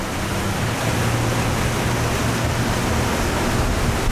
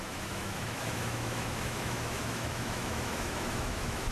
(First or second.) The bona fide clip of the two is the first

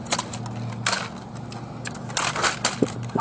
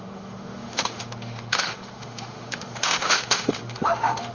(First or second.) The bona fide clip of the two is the first